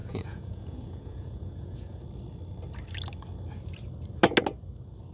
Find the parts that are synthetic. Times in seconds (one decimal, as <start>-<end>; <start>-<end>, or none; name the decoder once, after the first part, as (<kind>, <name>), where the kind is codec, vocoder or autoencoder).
0.0-2.0 (vocoder, Vocos)